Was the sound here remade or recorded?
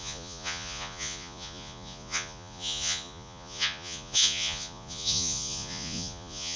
remade